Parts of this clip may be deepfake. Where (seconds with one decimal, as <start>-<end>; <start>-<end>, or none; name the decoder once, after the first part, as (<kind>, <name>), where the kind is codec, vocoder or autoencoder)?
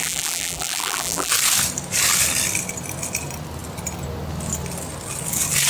0.0-1.3 (vocoder, BigVGAN v2)